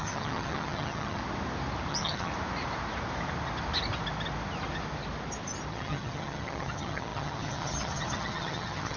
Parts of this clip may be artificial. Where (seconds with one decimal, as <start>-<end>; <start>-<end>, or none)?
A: 0.0-1.2; 1.9-2.3; 5.7-9.0